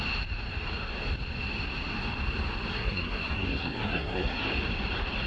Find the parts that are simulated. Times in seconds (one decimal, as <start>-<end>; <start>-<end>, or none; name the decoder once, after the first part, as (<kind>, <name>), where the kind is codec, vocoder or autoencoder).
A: 2.7-4.5 (codec, SNAC)